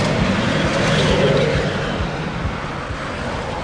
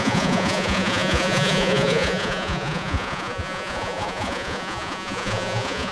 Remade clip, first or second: second